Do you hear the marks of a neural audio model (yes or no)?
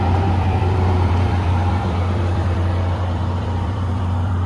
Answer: yes